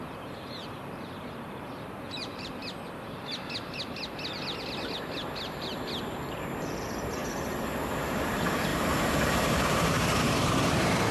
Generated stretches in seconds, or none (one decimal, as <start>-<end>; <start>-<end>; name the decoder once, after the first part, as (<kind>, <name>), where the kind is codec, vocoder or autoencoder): 0.0-2.6 (vocoder, BigVGAN v2); 6.0-7.2; 7.9-8.7; 9.2-11.1

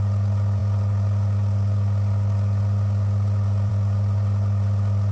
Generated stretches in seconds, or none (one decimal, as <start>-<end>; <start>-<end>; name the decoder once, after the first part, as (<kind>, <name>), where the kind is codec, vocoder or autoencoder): none

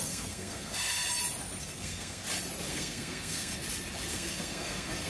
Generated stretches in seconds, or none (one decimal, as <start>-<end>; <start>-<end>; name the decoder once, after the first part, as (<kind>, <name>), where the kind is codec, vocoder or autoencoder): 0.0-1.0 (codec, SNAC); 1.6-2.2; 2.7-3.6; 4.1-5.1

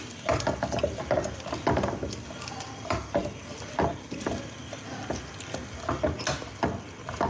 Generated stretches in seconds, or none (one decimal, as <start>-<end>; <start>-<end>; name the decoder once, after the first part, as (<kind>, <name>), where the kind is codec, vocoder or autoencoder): none

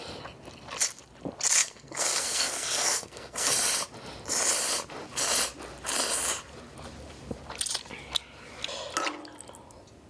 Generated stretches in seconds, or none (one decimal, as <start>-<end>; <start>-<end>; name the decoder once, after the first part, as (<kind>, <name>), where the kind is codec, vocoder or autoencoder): 1.6-3.5 (codec, SNAC)

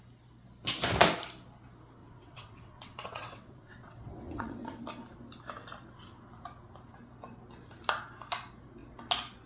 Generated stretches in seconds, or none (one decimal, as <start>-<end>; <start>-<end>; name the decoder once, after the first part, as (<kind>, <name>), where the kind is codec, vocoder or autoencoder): 2.0-4.8 (vocoder, WaveNeXt)

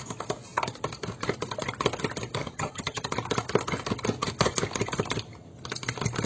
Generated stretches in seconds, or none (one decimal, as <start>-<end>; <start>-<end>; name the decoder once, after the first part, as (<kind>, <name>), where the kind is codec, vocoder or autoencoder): 2.4-3.1 (vocoder, HiFi-GAN)